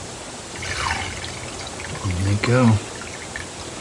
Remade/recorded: recorded